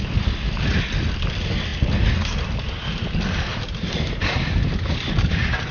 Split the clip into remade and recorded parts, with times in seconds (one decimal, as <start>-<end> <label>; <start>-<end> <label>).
0.0-5.7 recorded